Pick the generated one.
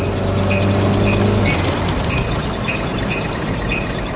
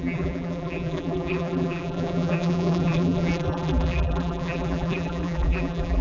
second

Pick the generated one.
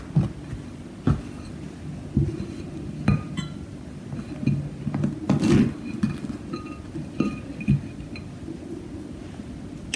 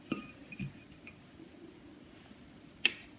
second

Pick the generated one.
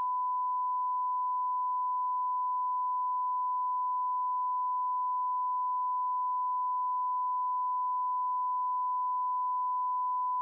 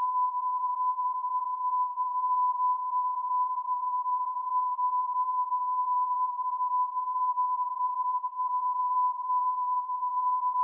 second